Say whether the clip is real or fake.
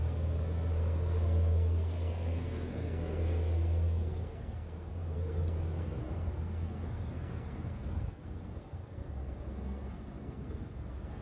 fake